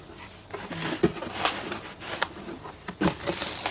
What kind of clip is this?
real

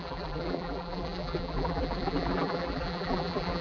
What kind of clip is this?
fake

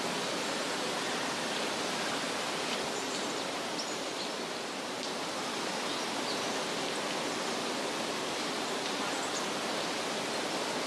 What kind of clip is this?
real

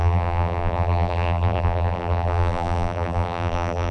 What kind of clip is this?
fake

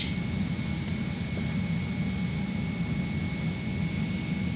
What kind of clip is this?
real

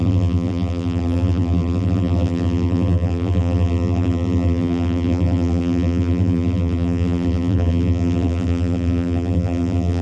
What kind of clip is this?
fake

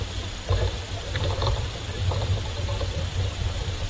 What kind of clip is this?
fake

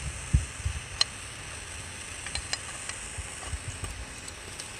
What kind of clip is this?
real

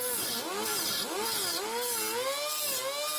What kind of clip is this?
real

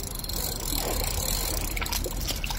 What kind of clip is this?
real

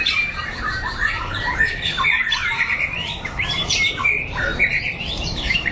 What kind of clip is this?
fake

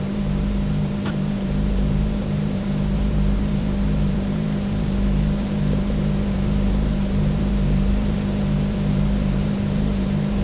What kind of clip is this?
fake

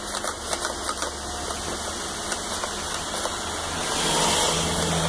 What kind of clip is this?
real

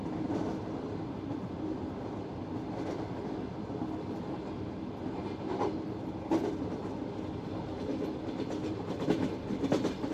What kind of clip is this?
real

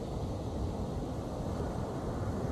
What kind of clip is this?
real